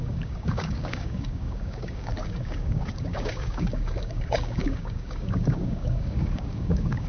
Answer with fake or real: fake